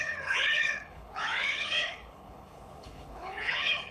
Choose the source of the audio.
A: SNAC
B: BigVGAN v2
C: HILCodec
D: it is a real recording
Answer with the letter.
C